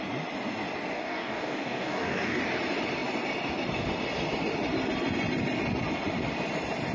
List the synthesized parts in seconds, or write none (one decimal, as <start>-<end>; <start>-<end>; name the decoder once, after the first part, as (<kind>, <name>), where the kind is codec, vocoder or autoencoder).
0.9-2.4 (codec, DAC)